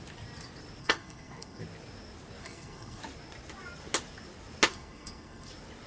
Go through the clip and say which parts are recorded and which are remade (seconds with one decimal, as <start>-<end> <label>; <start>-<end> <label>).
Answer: 0.0-0.8 recorded; 0.8-1.6 remade; 1.6-2.4 recorded; 2.4-3.0 remade; 3.0-4.7 recorded; 4.7-5.5 remade; 5.5-5.9 recorded